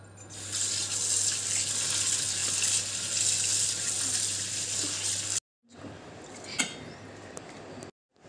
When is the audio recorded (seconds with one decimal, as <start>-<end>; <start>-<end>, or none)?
0.0-8.3